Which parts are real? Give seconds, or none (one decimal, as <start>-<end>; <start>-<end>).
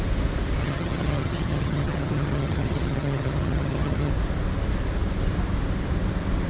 0.0-0.6; 4.1-6.5